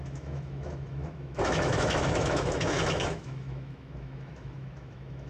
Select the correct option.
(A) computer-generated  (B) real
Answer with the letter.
A